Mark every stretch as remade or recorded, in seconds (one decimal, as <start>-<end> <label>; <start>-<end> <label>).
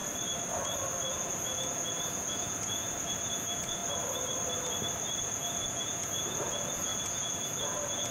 0.0-1.1 recorded; 1.1-3.8 remade; 3.8-5.2 recorded; 5.2-8.1 remade